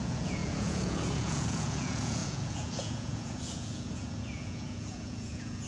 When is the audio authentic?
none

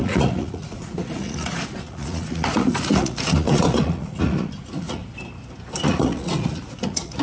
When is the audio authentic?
5.0-5.8